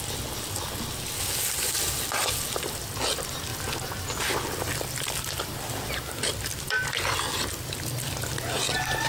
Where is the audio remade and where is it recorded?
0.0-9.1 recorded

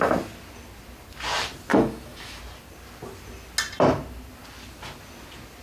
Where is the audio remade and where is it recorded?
0.0-1.7 recorded; 1.7-2.4 remade; 2.4-5.6 recorded

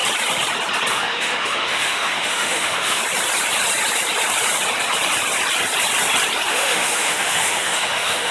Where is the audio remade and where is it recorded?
0.0-0.9 recorded; 0.9-3.0 remade; 3.0-6.5 recorded; 6.5-8.3 remade

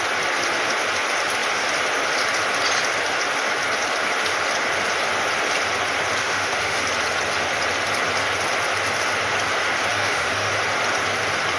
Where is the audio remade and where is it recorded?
0.0-6.2 recorded; 6.2-6.8 remade; 6.8-9.9 recorded; 9.9-10.5 remade; 10.5-11.6 recorded

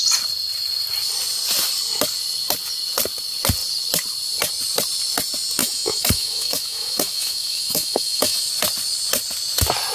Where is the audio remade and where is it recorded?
0.0-5.6 recorded; 5.6-8.5 remade; 8.5-9.9 recorded

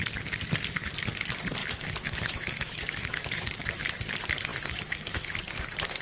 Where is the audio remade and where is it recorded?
0.0-1.6 recorded; 1.6-3.9 remade; 3.9-4.5 recorded; 4.5-5.4 remade; 5.4-6.0 recorded

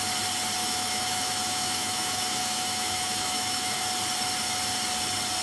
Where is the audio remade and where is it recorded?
0.0-0.6 recorded; 0.6-3.8 remade; 3.8-5.4 recorded